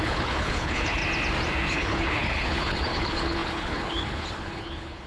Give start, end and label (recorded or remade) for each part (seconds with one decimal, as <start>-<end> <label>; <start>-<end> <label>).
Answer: 0.0-1.0 remade; 1.0-1.7 recorded; 1.7-5.1 remade